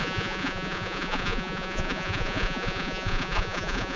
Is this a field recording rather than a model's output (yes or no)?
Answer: no